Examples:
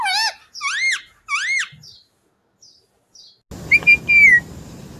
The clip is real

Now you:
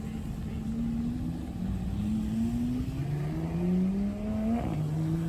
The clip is real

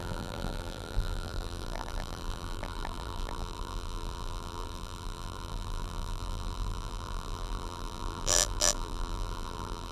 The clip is fake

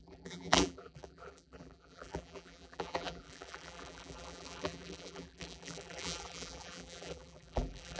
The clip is fake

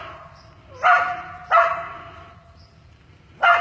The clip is real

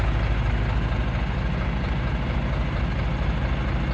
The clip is real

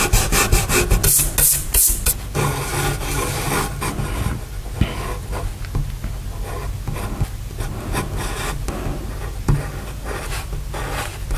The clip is real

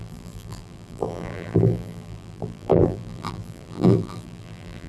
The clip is fake